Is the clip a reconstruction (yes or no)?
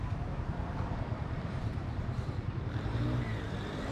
yes